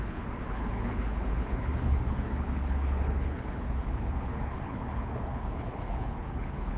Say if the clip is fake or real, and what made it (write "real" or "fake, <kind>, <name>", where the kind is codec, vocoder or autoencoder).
fake, codec, HILCodec